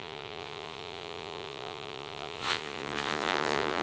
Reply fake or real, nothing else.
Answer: fake